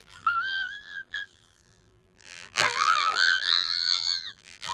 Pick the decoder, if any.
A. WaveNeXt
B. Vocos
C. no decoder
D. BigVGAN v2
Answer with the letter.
D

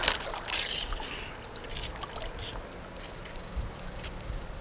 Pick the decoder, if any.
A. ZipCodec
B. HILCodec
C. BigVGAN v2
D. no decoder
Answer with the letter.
D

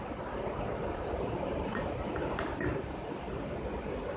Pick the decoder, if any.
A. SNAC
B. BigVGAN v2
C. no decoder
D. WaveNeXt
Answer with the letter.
B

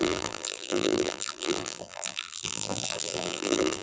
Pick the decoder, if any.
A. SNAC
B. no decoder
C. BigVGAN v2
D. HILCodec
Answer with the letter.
C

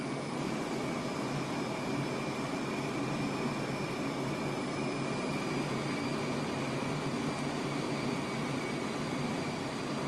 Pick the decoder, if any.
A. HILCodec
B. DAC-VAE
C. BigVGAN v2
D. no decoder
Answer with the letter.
D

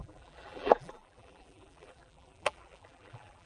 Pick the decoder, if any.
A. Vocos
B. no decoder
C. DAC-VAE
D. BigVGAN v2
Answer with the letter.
D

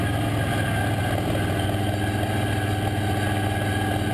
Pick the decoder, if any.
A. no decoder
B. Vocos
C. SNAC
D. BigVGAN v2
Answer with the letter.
A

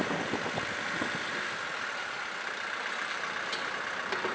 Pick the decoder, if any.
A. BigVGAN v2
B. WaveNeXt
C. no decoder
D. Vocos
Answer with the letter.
C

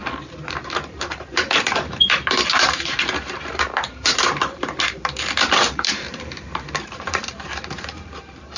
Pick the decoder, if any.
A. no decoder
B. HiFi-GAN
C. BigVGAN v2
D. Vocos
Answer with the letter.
C